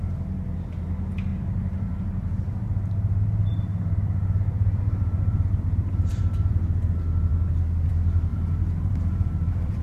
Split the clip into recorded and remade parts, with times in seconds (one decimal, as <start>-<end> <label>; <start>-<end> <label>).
0.0-1.3 recorded; 1.3-6.5 remade; 6.5-8.3 recorded; 8.3-9.8 remade